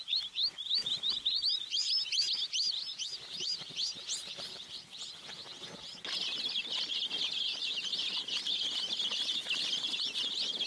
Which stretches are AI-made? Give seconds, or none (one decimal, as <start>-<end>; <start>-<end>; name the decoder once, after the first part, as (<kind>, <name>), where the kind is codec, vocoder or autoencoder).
0.0-2.9 (vocoder, BigVGAN v2); 4.2-5.4; 6.8-10.7

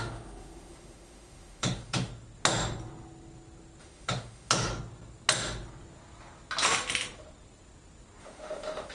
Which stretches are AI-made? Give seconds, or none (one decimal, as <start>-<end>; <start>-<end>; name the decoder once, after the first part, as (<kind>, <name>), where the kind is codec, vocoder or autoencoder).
0.0-2.1 (autoencoder, DAC-VAE); 3.8-4.7; 8.2-8.9

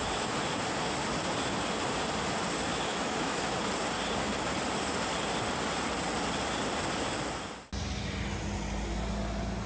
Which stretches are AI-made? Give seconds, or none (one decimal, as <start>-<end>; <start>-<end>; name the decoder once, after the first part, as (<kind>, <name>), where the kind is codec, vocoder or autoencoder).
2.9-3.4 (autoencoder, DAC-VAE)

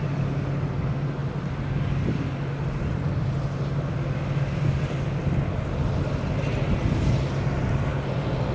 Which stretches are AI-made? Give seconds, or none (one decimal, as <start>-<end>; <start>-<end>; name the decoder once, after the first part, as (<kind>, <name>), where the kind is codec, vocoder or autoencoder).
none